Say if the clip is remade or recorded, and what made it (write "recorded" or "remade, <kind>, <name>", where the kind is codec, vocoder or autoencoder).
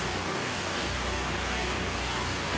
remade, codec, DAC